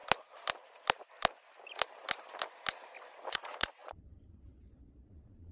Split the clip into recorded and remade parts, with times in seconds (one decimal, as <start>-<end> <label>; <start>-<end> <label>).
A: 0.0-3.3 recorded; 3.3-5.5 remade